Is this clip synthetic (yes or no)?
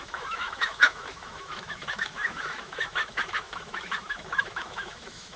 yes